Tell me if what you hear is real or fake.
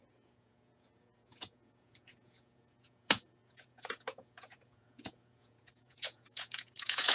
fake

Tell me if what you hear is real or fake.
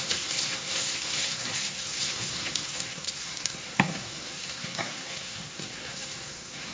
fake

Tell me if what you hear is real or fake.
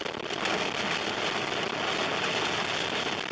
real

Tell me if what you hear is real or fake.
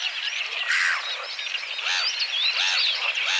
real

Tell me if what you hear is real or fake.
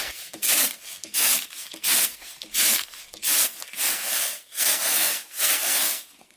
fake